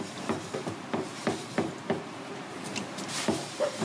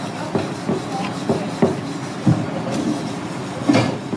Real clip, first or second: second